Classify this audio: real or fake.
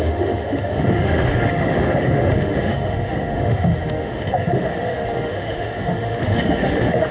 fake